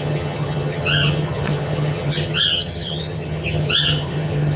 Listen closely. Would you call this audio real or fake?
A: fake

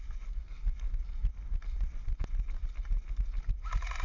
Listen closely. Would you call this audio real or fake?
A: real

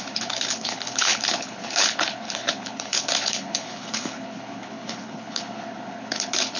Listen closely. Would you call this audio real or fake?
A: fake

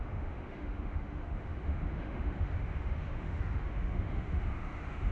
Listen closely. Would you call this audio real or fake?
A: fake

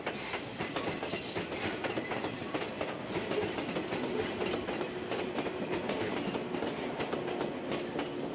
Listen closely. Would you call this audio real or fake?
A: real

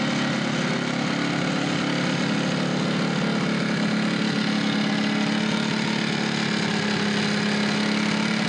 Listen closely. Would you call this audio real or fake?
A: real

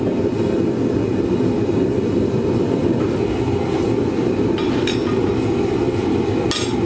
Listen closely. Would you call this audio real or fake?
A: real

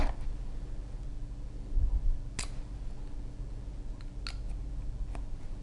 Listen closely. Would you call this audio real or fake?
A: real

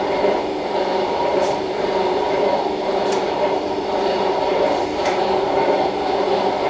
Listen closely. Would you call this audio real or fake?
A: fake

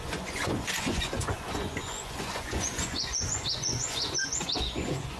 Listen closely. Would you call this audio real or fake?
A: fake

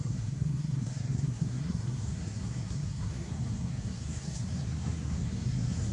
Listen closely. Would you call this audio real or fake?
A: fake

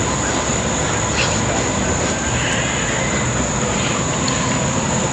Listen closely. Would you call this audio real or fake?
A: real